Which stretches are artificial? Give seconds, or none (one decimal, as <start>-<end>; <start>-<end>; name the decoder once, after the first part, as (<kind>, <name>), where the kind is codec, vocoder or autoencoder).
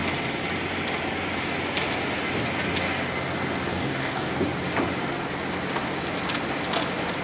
3.7-4.3 (codec, DAC)